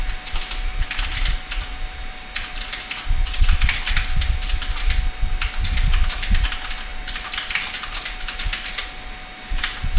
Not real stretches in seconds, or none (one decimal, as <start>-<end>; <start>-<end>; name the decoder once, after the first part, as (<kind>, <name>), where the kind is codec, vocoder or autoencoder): 0.7-3.8 (vocoder, BigVGAN v2); 5.9-6.5; 6.9-8.0